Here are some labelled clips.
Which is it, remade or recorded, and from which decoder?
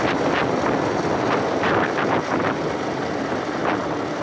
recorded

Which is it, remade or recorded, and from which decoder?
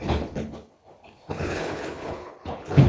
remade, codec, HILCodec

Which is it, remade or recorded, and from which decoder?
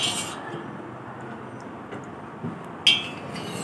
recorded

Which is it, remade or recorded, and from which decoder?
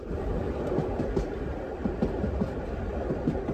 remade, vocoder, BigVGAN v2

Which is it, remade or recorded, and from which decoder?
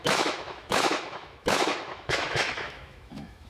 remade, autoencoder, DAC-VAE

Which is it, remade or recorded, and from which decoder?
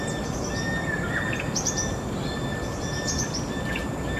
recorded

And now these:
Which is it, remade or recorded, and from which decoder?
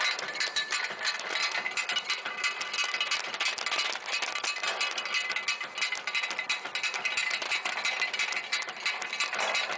recorded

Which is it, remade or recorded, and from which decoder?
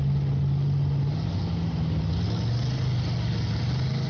recorded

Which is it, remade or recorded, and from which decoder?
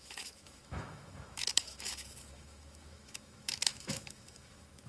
remade, autoencoder, DAC-VAE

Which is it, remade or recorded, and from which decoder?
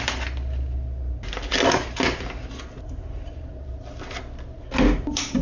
recorded